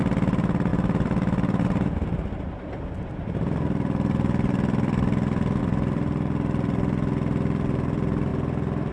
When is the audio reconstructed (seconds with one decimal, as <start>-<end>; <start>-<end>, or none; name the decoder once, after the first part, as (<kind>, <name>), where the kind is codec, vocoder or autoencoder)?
0.0-8.3 (vocoder, BigVGAN v2)